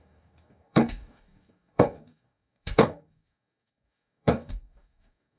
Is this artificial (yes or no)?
yes